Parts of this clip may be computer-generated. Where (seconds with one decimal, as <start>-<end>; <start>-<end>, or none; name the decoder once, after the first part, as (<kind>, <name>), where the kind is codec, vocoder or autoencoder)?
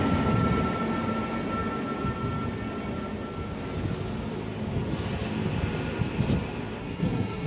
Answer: 6.8-7.5 (codec, SNAC)